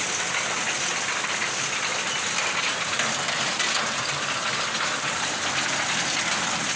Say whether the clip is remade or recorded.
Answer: recorded